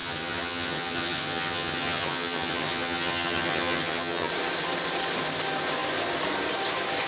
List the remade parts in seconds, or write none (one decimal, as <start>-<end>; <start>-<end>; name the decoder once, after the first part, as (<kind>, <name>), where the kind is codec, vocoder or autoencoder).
0.0-4.3 (vocoder, HiFi-GAN)